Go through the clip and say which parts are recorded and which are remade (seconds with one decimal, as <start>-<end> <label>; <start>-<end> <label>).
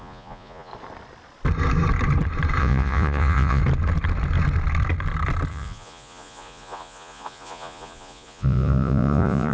0.0-0.7 remade; 0.7-2.6 recorded; 2.6-3.6 remade; 3.6-5.5 recorded; 5.5-9.5 remade